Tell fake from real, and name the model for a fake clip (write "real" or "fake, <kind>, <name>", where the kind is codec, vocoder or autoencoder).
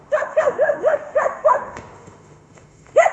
fake, autoencoder, DAC-VAE